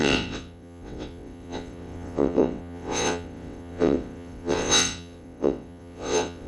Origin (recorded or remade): remade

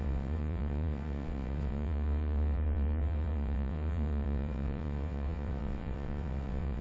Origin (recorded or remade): remade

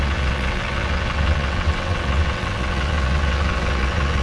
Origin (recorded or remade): remade